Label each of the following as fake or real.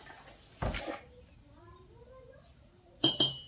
real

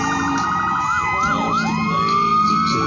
real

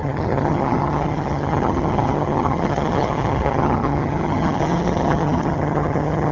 fake